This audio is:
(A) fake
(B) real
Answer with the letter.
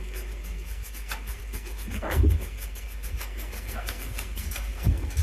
A